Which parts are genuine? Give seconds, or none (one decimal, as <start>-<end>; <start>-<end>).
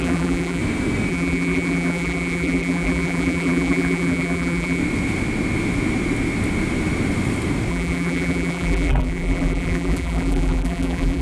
0.6-1.1; 4.8-7.7